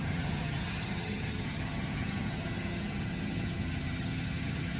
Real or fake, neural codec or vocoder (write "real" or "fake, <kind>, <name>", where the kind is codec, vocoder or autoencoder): fake, vocoder, HiFi-GAN